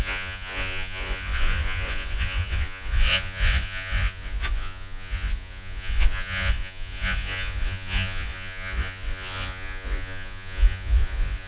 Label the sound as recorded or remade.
remade